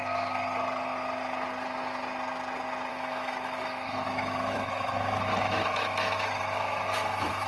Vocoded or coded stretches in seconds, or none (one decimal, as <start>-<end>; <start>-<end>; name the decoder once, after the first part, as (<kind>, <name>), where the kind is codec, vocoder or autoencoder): 2.9-7.5 (autoencoder, DAC-VAE)